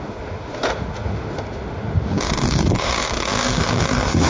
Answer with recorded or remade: remade